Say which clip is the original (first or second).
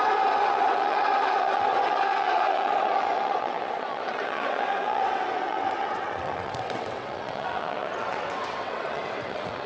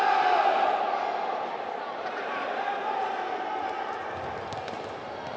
second